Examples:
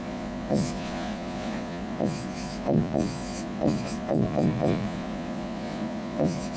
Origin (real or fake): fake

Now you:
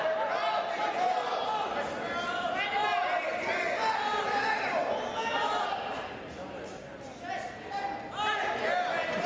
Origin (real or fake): real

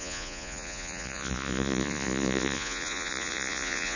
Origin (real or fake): fake